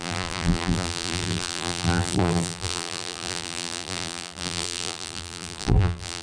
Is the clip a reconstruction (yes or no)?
yes